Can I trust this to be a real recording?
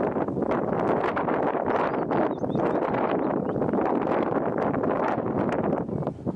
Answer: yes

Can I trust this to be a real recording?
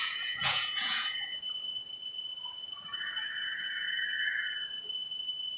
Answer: no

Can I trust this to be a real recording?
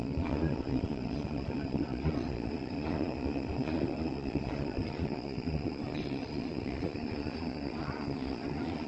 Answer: no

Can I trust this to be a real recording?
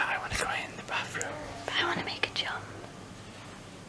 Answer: yes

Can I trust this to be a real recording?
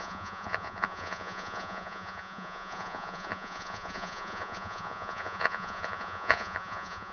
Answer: no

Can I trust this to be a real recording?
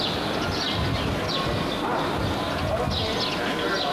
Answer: yes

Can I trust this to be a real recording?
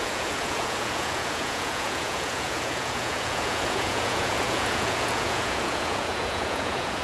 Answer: no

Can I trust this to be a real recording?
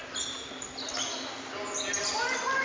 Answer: yes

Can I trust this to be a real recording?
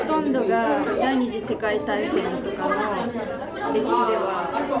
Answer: yes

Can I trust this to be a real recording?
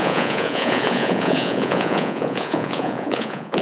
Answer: no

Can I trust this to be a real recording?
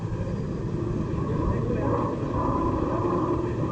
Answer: yes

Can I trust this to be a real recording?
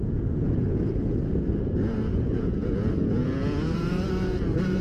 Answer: no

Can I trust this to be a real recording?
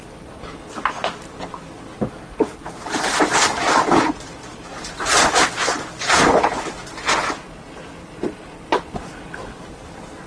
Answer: yes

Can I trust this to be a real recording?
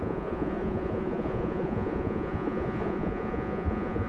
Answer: no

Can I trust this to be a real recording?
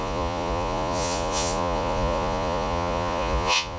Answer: no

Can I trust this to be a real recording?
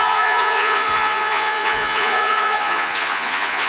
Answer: no